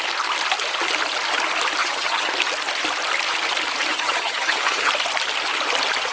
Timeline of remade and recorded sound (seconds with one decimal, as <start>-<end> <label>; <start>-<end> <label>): 0.0-1.8 recorded; 1.8-2.3 remade; 2.3-3.9 recorded; 3.9-4.9 remade; 4.9-6.1 recorded